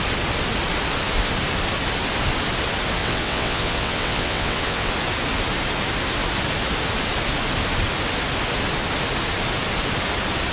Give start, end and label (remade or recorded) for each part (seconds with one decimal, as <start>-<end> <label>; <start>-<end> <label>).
0.0-3.0 recorded; 3.0-4.9 remade; 4.9-10.5 recorded